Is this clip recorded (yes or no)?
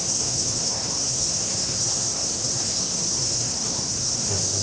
no